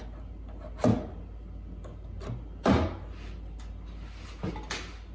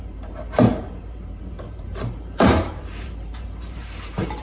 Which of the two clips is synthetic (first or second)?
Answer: second